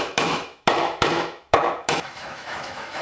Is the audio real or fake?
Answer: fake